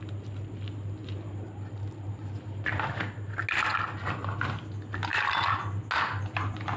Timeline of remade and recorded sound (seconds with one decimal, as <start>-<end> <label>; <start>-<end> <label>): 0.0-6.8 recorded